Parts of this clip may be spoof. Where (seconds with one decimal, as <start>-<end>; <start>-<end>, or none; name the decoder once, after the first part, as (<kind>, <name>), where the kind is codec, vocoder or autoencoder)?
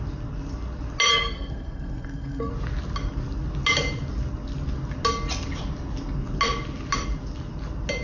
1.1-2.5 (codec, SNAC)